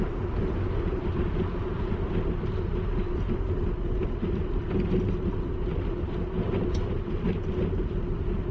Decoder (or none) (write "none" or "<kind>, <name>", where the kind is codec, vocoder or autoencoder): none